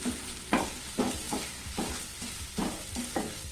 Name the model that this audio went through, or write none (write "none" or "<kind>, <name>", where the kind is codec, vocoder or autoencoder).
none